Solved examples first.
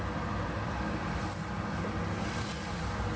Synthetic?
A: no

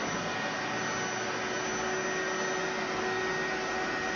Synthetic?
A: no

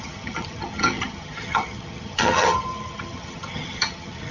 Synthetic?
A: yes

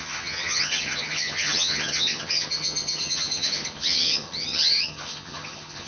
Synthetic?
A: yes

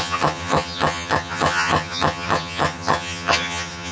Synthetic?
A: yes